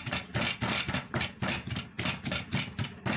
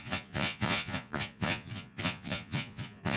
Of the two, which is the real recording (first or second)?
first